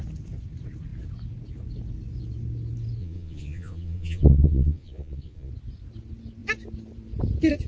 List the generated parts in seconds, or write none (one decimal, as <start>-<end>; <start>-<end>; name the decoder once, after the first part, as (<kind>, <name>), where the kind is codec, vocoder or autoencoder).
3.0-5.5 (vocoder, Vocos)